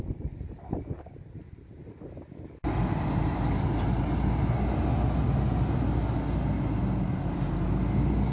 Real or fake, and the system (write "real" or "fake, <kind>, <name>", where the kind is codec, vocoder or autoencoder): real